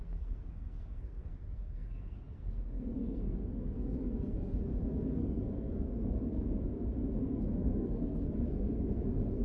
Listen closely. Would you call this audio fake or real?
fake